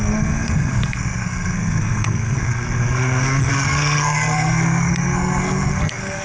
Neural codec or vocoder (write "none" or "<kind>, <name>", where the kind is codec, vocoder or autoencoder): codec, SNAC